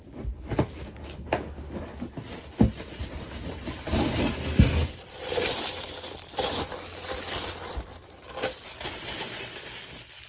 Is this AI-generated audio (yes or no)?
no